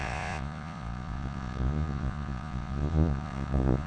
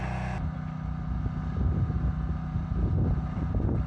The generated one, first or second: first